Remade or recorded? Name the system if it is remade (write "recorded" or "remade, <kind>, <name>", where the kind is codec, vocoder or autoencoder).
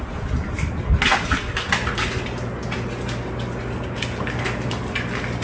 recorded